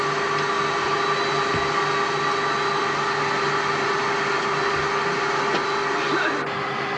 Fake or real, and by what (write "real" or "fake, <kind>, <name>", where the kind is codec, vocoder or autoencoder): real